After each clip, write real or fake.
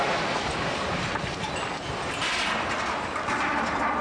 real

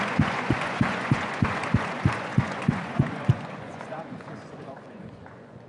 fake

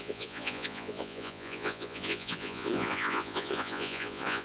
fake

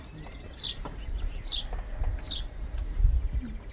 real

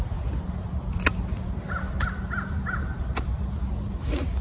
real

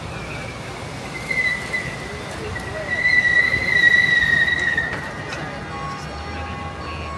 real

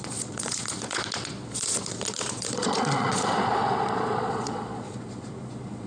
fake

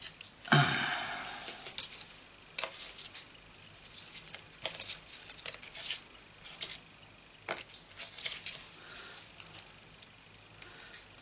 real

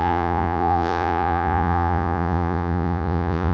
fake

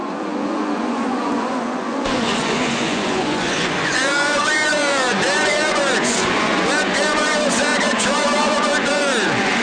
fake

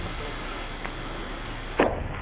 real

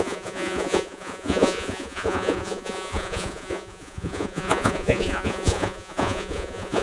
fake